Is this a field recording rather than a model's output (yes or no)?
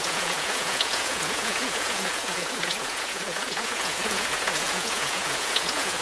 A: no